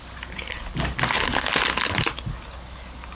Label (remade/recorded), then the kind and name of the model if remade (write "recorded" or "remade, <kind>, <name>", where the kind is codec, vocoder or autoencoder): recorded